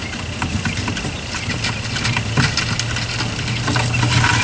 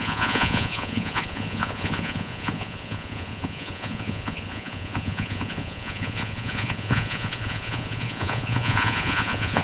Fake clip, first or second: second